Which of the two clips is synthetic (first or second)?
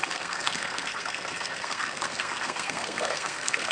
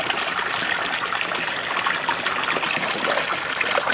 first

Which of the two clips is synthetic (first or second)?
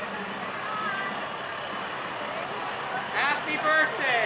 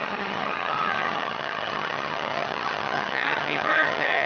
second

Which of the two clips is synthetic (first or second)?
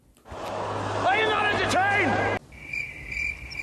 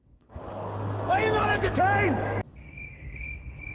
second